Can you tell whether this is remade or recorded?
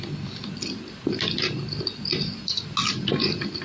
recorded